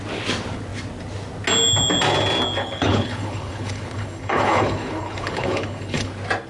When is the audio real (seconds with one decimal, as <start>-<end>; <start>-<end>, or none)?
0.0-2.6; 6.1-6.5